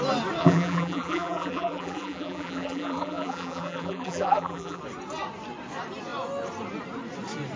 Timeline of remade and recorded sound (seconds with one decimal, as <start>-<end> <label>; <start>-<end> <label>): 0.0-0.4 recorded; 0.4-4.8 remade; 4.8-7.6 recorded